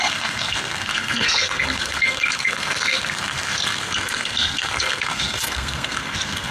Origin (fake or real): fake